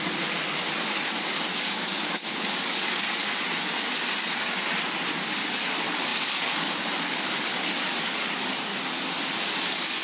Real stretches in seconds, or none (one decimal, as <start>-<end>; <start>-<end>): 3.3-5.3; 8.7-9.4